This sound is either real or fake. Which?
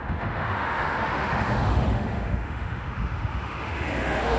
fake